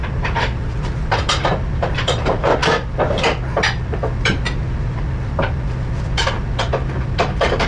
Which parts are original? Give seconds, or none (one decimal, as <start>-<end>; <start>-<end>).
none